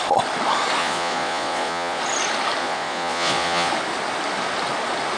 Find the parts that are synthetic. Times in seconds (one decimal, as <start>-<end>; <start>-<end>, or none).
0.8-2.0; 2.6-3.7